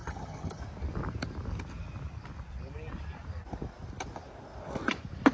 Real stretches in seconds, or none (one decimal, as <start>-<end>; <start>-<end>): 0.6-5.3